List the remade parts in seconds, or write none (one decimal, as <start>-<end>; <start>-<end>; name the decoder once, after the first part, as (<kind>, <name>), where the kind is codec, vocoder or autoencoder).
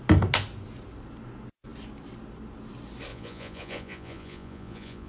3.1-5.1 (vocoder, Vocos)